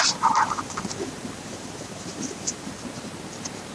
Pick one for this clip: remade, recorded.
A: remade